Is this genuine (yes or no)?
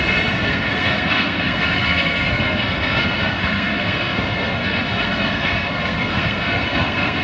no